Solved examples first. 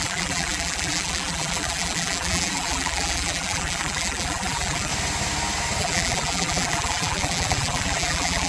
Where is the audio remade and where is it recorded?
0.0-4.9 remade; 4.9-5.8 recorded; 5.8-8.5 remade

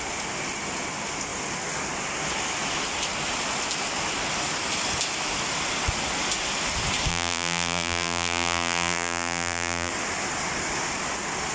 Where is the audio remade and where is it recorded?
0.0-7.1 recorded; 7.1-9.9 remade; 9.9-11.5 recorded

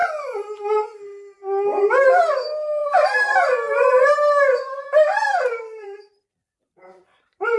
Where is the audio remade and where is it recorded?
0.0-2.8 recorded; 2.8-7.6 remade

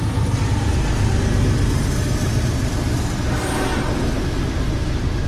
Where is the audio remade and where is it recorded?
0.0-3.7 remade; 3.7-4.4 recorded; 4.4-5.3 remade

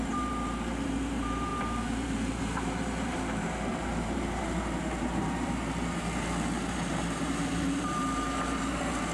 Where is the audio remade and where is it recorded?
0.0-9.1 remade

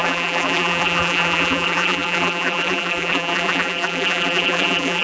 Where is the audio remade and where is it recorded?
0.0-5.0 remade

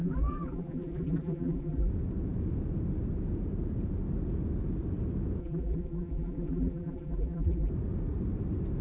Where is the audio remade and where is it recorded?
0.0-1.9 remade; 1.9-5.4 recorded; 5.4-7.7 remade; 7.7-8.8 recorded